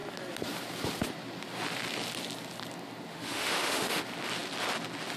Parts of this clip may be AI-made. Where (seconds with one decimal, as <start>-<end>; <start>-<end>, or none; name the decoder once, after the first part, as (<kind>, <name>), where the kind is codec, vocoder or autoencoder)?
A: 3.1-4.0 (autoencoder, DAC-VAE)